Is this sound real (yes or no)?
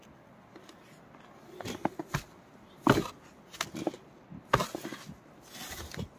yes